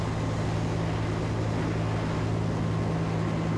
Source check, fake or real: real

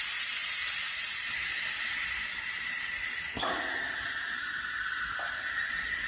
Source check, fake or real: real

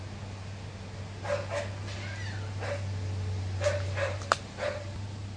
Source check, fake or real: real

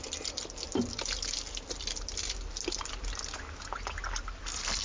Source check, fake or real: real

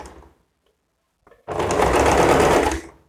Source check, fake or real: real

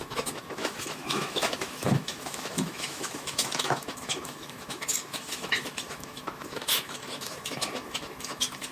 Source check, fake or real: fake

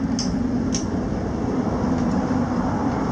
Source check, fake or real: real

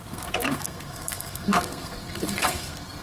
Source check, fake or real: fake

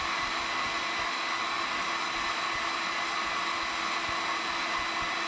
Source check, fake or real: real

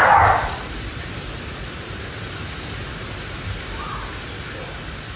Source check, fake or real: real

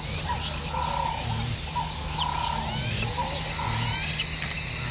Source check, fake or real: real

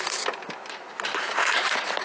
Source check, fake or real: real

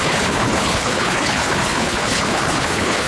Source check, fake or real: fake